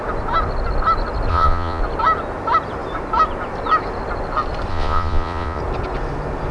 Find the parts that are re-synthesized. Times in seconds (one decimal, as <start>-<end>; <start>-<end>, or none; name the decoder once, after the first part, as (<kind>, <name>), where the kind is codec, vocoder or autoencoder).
1.3-1.8 (vocoder, Vocos); 4.7-5.6